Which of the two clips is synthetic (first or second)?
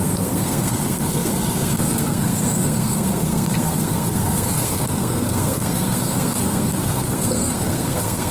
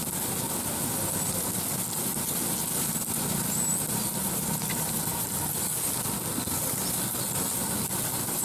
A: first